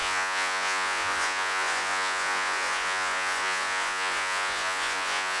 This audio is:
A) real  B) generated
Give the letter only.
B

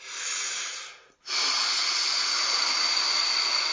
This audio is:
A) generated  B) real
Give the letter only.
B